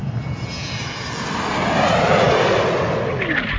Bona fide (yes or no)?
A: yes